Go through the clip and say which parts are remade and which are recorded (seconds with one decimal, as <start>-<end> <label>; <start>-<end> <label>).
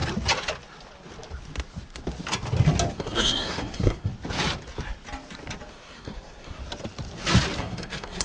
0.0-2.9 recorded; 2.9-4.1 remade; 4.1-5.7 recorded; 5.7-6.6 remade; 6.6-7.6 recorded; 7.6-8.2 remade